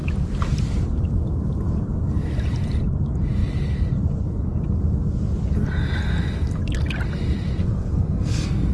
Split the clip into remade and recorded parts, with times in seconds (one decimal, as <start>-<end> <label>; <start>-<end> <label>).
0.0-7.6 recorded; 7.6-8.7 remade